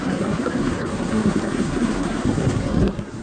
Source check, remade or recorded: remade